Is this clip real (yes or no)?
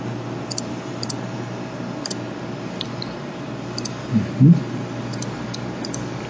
yes